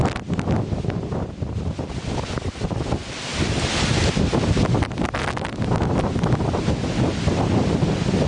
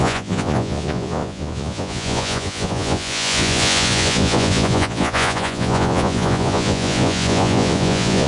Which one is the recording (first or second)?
first